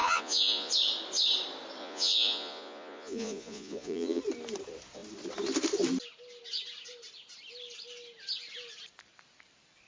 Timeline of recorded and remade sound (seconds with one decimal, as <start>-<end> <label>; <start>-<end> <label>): 0.0-0.7 remade; 0.7-1.8 recorded; 1.8-4.2 remade; 4.2-9.9 recorded